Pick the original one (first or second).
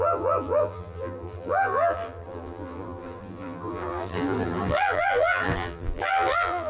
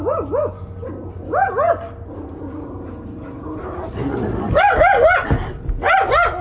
second